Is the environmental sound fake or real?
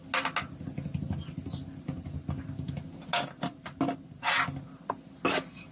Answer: real